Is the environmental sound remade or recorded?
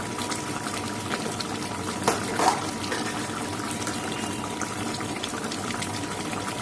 remade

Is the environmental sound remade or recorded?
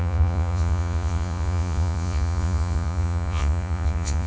remade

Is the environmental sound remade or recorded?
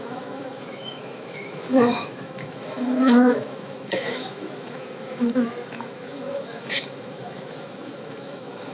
remade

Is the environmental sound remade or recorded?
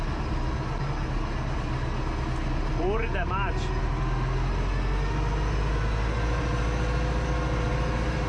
recorded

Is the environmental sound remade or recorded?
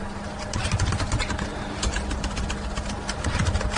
recorded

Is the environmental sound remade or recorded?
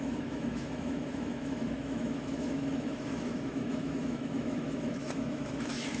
remade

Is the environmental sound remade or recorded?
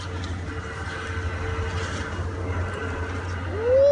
recorded